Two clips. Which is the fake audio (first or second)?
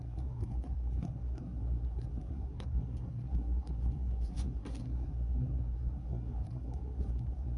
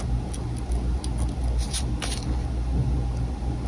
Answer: first